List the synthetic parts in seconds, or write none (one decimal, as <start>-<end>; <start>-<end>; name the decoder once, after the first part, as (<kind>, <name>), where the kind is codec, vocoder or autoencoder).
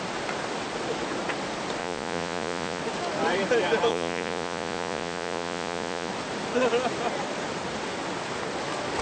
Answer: 1.8-2.8 (vocoder, Vocos); 3.9-6.1